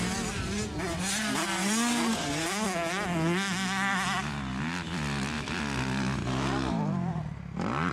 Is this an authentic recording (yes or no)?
yes